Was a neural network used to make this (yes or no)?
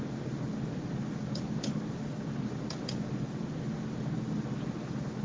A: no